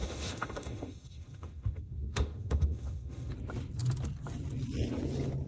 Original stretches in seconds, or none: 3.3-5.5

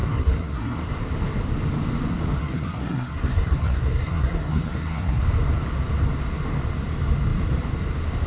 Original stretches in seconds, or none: 0.8-2.4; 5.2-8.3

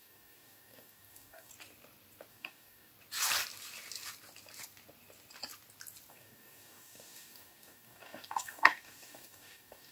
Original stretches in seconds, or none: 1.5-2.3; 2.9-6.1

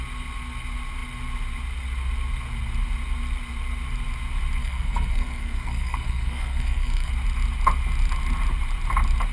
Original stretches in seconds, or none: 0.0-4.6; 7.1-9.3

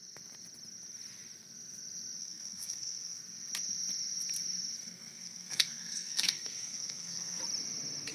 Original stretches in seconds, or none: 0.0-2.2; 3.2-4.8; 7.4-8.1